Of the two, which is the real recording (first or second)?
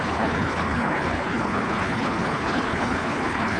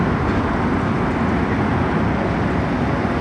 second